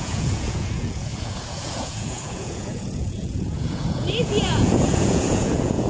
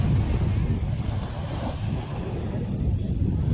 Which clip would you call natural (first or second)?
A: second